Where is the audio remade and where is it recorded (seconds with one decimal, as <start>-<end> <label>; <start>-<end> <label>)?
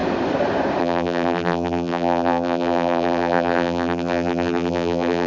0.0-0.8 recorded; 0.8-5.3 remade